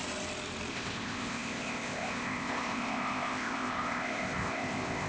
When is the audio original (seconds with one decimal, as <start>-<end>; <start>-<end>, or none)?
0.0-0.7